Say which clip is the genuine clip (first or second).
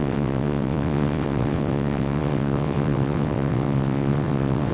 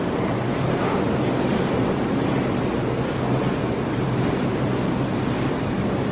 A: second